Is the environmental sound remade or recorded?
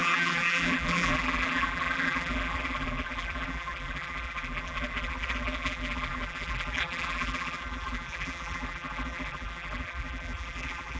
remade